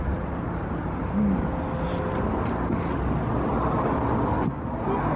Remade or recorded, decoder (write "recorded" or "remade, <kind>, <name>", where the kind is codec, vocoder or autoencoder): recorded